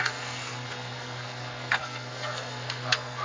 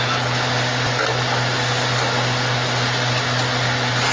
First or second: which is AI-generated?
first